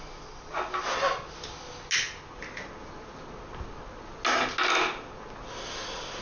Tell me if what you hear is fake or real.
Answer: real